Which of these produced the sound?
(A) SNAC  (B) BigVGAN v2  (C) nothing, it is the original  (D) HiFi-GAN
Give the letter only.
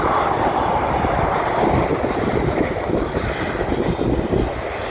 C